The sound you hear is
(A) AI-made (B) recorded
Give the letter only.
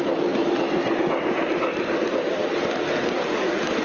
B